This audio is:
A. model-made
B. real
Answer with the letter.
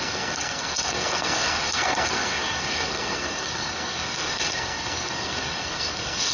A